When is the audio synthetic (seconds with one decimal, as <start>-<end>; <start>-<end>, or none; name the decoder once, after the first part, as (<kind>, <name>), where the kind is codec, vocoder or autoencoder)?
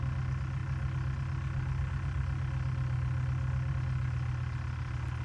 none